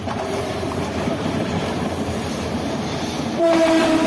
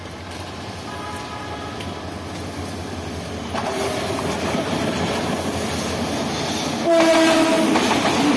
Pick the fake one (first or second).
first